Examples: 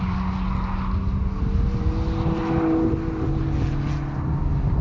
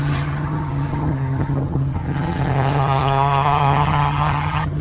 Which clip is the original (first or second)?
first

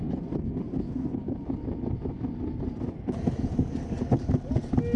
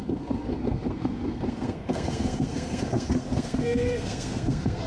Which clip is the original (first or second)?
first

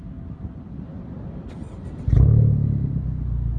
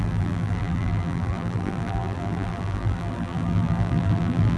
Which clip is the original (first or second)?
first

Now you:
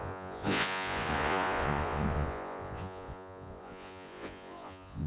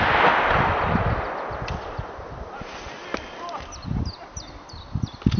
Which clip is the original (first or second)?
second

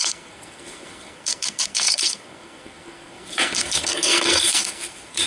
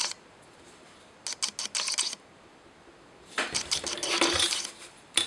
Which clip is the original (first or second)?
second